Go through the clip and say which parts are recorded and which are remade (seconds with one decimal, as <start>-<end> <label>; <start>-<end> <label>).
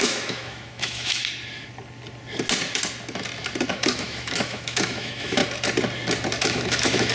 0.0-1.2 remade; 1.2-3.7 recorded; 3.7-5.4 remade; 5.4-6.4 recorded; 6.4-7.1 remade